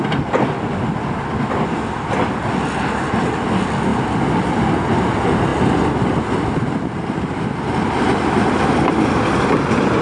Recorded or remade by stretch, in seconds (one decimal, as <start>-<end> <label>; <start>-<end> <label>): 0.0-10.0 recorded